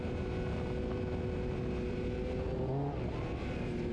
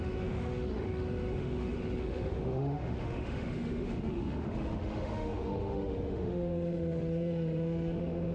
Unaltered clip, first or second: first